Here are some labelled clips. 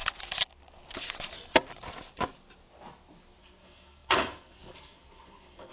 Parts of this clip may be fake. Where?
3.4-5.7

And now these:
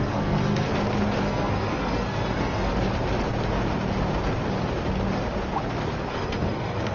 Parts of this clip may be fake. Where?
0.0-0.7; 1.2-2.7; 6.1-6.9

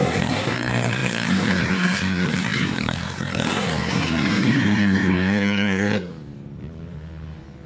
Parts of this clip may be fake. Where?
0.0-6.1

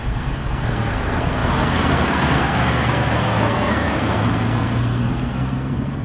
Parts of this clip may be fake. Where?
0.0-6.0

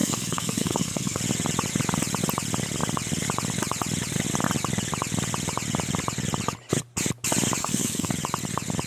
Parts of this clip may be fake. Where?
0.0-1.2; 7.6-8.1

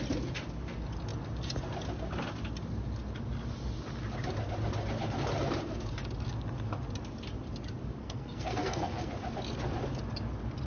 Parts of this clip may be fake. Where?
8.0-9.1

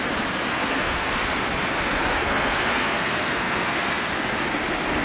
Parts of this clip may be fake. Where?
0.5-1.1; 2.1-4.1

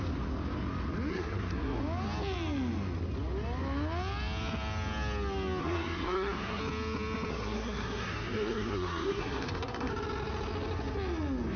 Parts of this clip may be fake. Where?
1.1-1.8; 5.6-6.6; 7.3-9.9